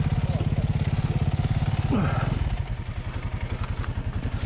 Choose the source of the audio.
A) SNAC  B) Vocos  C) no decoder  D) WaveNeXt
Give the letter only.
C